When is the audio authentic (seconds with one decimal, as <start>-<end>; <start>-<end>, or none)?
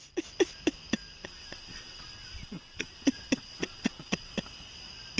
0.0-1.2; 4.3-5.2